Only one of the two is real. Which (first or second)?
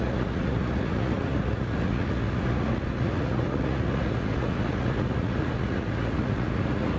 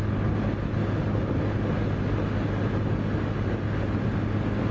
second